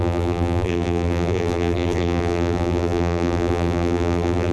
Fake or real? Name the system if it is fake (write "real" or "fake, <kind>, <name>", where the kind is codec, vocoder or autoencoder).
fake, vocoder, BigVGAN v2